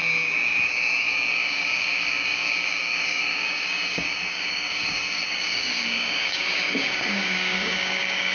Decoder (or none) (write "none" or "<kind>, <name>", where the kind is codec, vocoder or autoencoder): codec, DAC